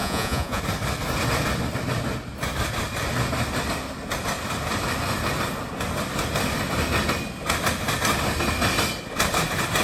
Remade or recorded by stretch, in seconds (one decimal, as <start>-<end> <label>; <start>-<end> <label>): 0.0-0.6 remade; 0.6-9.8 recorded